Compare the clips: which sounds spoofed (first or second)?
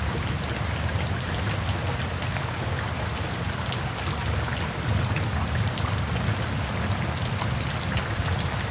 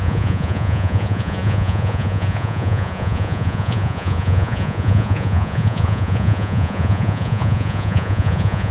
second